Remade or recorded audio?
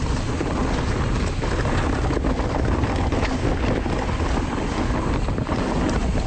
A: recorded